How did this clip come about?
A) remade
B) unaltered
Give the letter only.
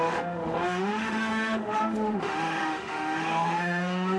A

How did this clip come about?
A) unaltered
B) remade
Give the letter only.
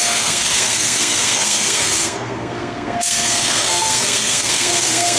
B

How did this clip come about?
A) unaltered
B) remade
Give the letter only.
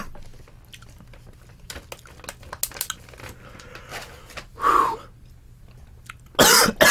A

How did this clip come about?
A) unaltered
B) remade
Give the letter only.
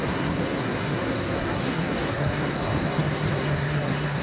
B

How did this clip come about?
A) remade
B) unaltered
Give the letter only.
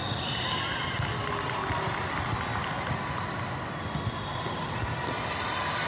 B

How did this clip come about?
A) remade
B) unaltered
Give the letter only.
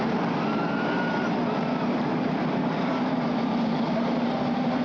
A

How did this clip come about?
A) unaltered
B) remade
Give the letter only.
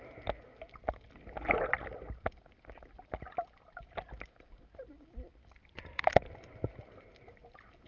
A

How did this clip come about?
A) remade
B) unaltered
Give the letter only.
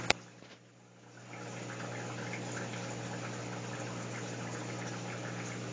B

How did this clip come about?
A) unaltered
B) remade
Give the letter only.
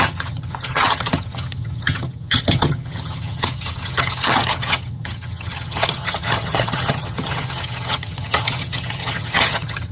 B